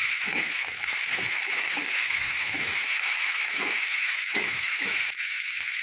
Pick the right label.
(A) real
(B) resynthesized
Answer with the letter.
B